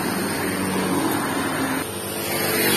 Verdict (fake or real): real